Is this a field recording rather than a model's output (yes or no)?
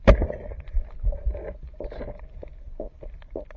no